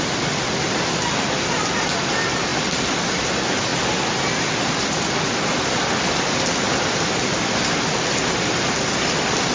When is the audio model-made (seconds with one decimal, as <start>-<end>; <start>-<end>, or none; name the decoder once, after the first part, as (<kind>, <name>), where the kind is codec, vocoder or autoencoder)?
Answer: none